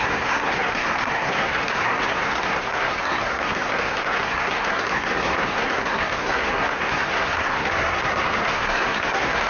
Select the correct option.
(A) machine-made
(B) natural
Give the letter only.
A